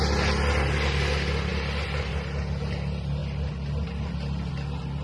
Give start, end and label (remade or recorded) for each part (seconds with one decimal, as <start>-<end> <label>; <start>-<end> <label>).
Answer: 0.0-5.0 recorded